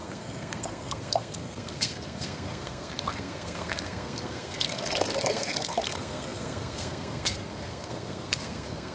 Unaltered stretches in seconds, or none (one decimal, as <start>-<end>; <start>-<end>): none